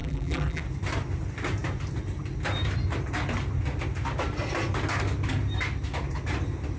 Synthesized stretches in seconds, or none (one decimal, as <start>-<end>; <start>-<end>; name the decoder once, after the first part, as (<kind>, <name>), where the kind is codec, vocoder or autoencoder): 0.0-0.6 (vocoder, BigVGAN v2)

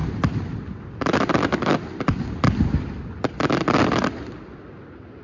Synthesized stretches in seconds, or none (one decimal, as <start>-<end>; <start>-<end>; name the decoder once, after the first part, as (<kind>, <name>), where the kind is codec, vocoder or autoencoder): none

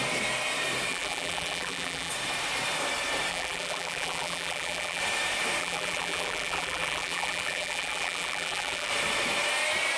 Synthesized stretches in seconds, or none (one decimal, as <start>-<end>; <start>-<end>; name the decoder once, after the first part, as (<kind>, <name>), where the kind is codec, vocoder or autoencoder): 0.9-2.1 (vocoder, BigVGAN v2); 3.3-5.0; 5.6-8.9

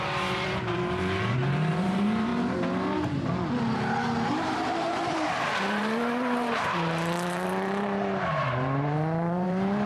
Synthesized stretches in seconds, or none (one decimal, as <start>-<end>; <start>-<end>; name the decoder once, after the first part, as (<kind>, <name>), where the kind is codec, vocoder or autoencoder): 0.0-2.3 (vocoder, BigVGAN v2); 4.3-9.9